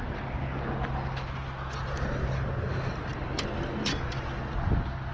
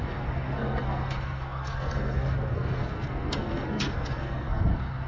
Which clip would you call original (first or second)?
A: first